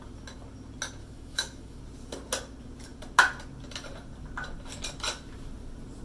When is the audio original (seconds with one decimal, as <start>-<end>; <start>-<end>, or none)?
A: 0.0-1.0; 1.8-6.0